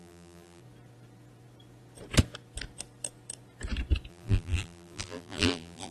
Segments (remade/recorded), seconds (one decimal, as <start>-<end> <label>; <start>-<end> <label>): 0.0-0.6 remade; 0.6-4.1 recorded; 4.1-5.9 remade